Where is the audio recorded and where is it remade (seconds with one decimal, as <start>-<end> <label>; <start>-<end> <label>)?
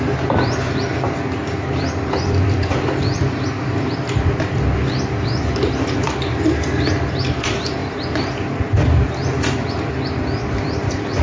0.0-11.2 remade